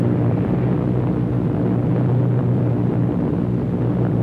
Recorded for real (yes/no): yes